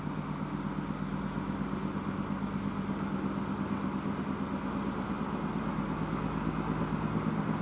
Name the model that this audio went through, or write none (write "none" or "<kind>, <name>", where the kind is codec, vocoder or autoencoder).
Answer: none